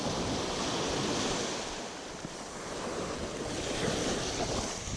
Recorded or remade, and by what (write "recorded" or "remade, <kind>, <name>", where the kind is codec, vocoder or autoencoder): recorded